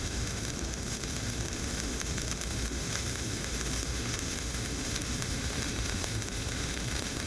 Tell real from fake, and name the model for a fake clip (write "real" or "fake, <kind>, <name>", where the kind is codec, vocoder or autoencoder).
fake, autoencoder, DAC-VAE